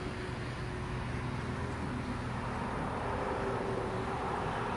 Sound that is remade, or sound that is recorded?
recorded